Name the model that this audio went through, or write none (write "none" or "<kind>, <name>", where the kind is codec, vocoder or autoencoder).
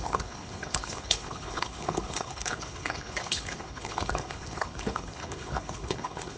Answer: codec, HILCodec